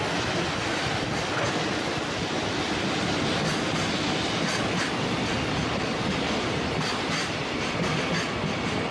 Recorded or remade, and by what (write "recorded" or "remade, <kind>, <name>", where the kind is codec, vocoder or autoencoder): recorded